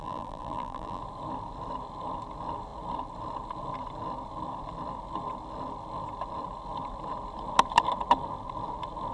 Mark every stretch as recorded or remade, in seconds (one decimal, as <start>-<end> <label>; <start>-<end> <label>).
0.0-1.0 remade; 1.0-9.1 recorded